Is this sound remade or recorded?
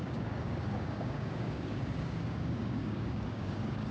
remade